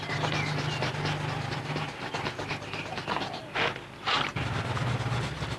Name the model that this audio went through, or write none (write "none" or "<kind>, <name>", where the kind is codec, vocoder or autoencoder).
none